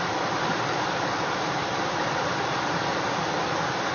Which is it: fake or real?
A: real